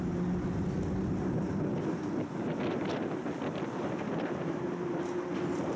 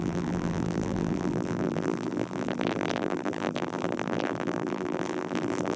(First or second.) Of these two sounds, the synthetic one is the second